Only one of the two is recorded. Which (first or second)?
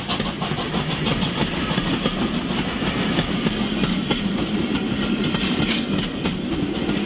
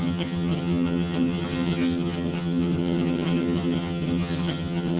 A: first